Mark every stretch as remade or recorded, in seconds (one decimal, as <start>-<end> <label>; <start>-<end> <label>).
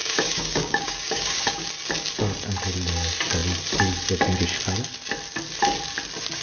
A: 0.0-1.7 remade; 1.7-6.4 recorded